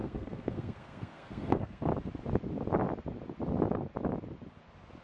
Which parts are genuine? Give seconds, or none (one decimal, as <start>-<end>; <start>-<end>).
1.9-5.0